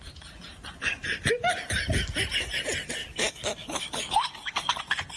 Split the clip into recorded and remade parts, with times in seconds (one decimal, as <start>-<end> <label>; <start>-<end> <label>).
0.0-3.0 recorded; 3.0-4.8 remade; 4.8-5.2 recorded